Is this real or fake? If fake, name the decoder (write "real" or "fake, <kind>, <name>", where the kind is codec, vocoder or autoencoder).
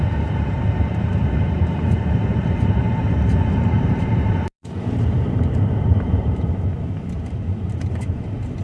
fake, vocoder, BigVGAN v2